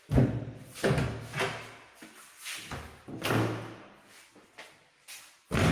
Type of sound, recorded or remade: recorded